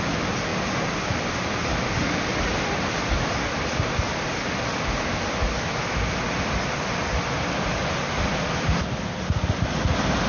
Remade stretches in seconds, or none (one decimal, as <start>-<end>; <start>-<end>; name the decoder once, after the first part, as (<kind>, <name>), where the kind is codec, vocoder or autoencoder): none